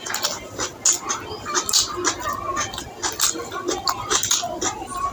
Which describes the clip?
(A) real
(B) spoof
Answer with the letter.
A